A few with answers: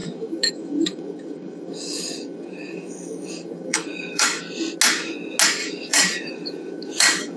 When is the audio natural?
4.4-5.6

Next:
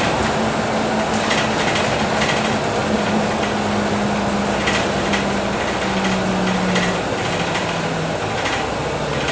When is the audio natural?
0.0-9.3